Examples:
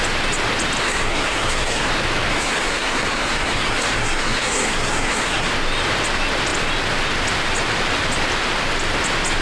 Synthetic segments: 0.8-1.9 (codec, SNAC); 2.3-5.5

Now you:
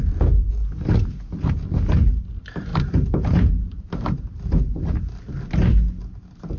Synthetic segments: 2.7-4.4 (vocoder, BigVGAN v2)

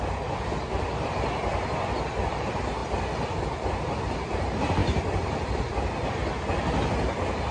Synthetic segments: none

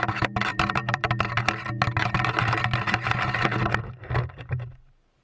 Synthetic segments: 0.5-1.4 (vocoder, BigVGAN v2)

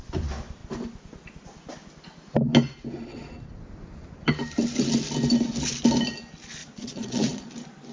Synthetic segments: 6.6-7.5 (vocoder, Vocos)

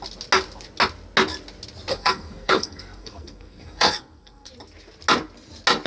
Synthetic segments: 1.9-4.5 (codec, SNAC)

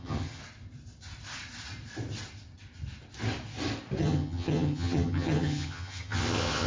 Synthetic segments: 0.0-0.4 (vocoder, HiFi-GAN); 4.0-6.7

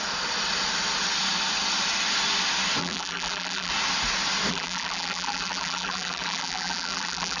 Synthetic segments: 2.8-3.7 (vocoder, BigVGAN v2); 4.5-7.4